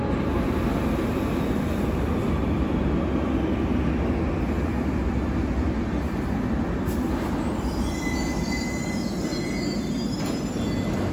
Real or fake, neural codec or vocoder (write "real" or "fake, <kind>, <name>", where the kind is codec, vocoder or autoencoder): real